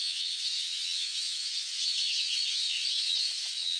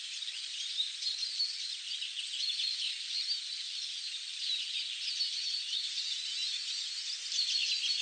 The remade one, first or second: first